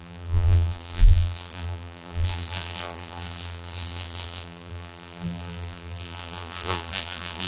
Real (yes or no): no